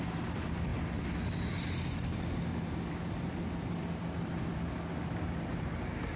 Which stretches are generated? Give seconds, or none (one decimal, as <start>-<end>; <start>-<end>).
none